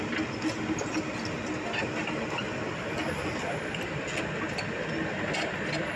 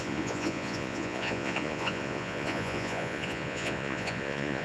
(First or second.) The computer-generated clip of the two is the second